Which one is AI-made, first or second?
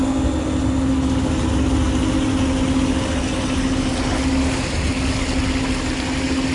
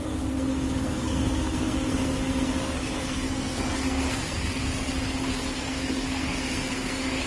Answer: second